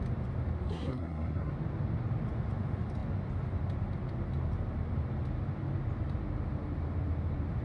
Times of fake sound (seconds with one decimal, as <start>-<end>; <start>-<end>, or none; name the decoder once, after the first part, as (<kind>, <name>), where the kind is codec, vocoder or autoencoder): 0.7-1.5 (codec, SNAC)